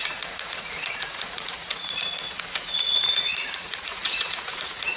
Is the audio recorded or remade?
remade